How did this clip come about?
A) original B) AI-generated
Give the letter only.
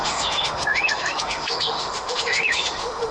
B